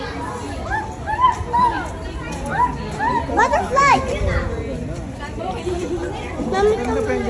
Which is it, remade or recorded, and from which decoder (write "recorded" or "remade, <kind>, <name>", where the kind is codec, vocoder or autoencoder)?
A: recorded